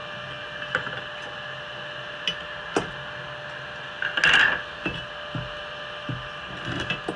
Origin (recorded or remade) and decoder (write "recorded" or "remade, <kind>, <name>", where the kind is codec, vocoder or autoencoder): recorded